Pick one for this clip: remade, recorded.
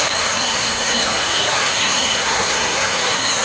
remade